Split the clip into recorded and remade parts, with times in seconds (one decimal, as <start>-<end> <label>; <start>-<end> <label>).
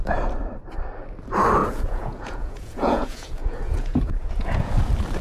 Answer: 0.0-1.6 recorded; 1.6-4.7 remade; 4.7-5.2 recorded